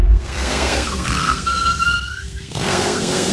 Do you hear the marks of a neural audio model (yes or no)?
yes